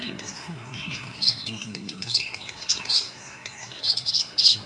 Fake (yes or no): yes